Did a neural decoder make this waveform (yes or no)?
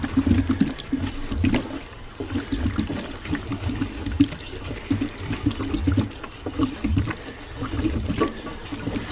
no